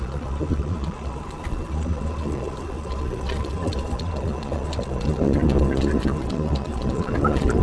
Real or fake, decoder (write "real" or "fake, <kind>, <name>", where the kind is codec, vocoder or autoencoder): fake, vocoder, Vocos